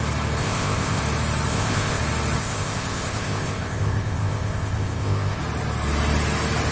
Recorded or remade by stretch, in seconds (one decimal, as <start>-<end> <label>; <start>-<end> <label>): 0.0-0.4 recorded; 0.4-1.0 remade; 1.0-1.5 recorded; 1.5-2.0 remade; 2.0-2.4 recorded; 2.4-5.4 remade; 5.4-6.7 recorded